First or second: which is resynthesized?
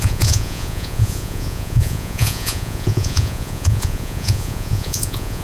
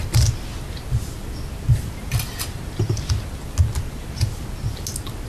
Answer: first